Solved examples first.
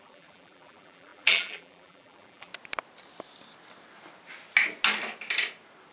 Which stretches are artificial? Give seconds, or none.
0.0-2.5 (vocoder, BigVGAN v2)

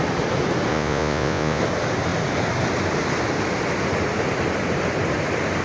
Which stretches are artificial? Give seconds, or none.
0.7-1.6 (vocoder, Vocos)

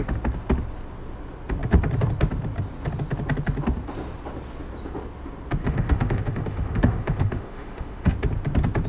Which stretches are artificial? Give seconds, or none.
5.6-8.1 (autoencoder, DAC-VAE)